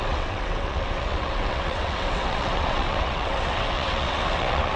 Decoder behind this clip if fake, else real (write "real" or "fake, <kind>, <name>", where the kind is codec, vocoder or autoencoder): fake, vocoder, WaveNeXt